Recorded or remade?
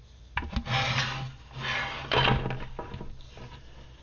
recorded